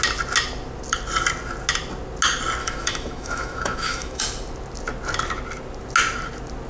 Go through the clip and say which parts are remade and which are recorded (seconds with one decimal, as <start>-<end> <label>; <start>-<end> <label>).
0.0-2.6 recorded; 2.6-4.2 remade; 4.2-6.7 recorded